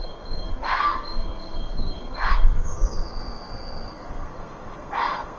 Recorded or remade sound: remade